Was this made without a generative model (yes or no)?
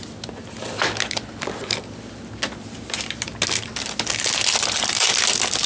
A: yes